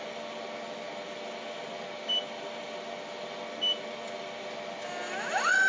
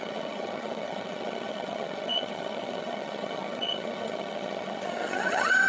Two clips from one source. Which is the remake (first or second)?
second